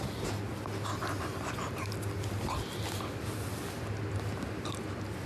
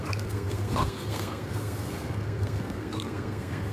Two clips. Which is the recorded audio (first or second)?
first